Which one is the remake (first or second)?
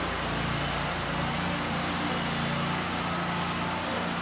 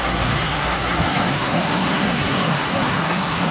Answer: second